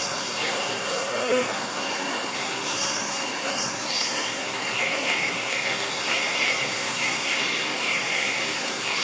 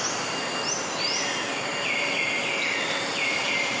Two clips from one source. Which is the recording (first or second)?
second